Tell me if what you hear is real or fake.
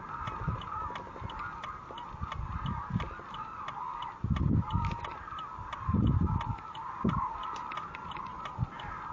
real